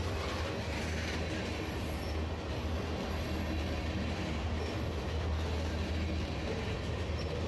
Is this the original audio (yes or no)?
yes